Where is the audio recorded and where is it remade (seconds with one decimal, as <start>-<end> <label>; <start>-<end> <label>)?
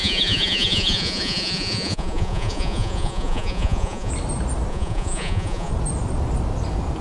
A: 0.0-4.1 remade; 4.1-4.7 recorded; 4.7-5.7 remade; 5.7-7.0 recorded